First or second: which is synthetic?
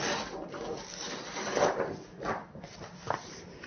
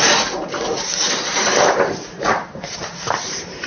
second